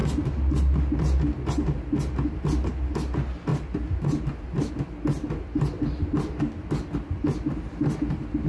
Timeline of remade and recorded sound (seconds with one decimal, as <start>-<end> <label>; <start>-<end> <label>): 0.0-8.5 recorded